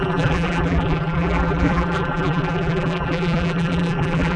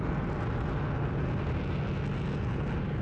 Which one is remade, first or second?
first